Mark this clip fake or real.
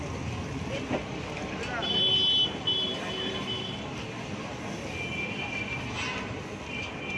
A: real